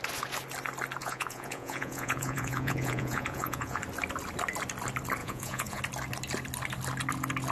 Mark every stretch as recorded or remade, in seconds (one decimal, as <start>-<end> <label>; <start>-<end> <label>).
0.0-1.0 recorded; 1.0-3.8 remade; 3.8-5.2 recorded; 5.2-5.8 remade; 5.8-7.5 recorded